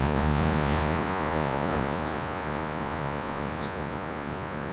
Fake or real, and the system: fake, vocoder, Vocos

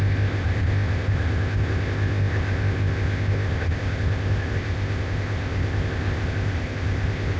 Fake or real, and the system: fake, codec, ZipCodec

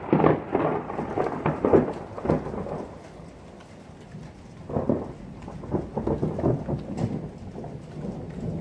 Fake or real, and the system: real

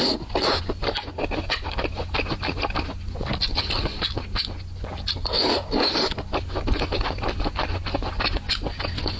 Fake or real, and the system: real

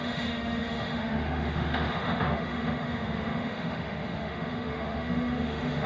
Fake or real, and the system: fake, autoencoder, DAC-VAE